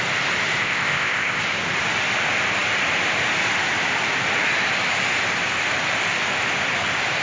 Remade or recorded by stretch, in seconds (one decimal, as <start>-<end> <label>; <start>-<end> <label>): 0.0-0.6 recorded; 0.6-1.4 remade; 1.4-7.2 recorded